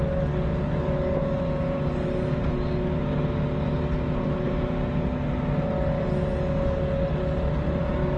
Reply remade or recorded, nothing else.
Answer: recorded